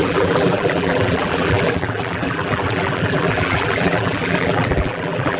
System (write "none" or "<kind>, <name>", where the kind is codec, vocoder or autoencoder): vocoder, BigVGAN v2